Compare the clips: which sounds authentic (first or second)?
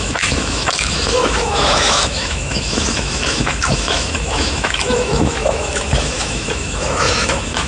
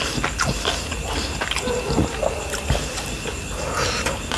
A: second